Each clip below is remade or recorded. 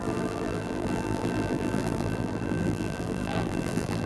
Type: remade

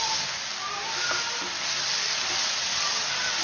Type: recorded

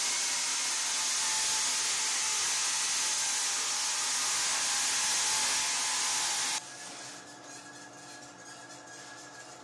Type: recorded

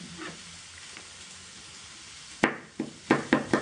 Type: recorded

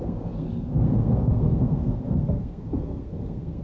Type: remade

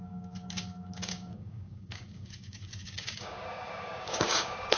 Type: remade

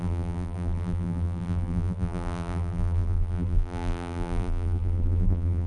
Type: remade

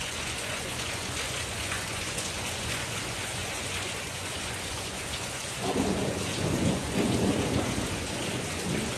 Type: remade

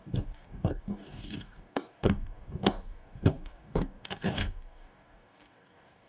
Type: remade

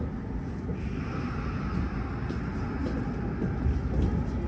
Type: recorded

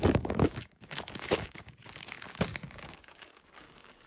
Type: remade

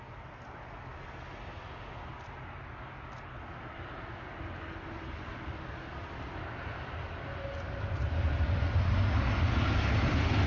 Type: recorded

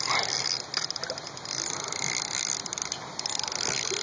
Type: recorded